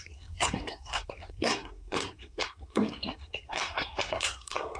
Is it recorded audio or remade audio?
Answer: remade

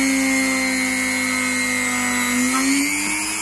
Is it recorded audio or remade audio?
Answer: recorded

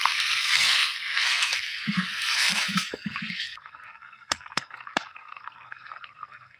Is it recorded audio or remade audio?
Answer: remade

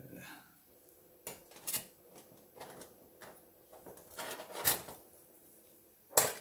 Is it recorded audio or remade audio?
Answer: recorded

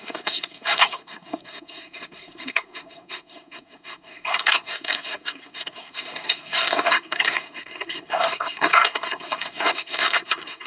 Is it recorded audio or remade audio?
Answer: remade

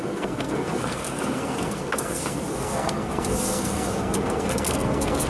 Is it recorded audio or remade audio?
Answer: remade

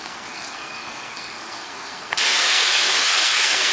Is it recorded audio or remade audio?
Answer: remade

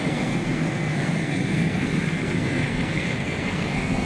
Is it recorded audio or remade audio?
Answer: remade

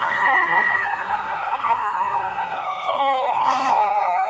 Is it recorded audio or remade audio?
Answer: remade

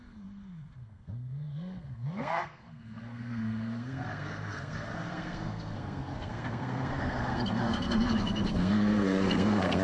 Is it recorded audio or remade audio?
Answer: remade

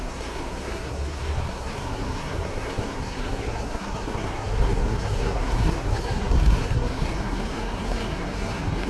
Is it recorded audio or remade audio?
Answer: remade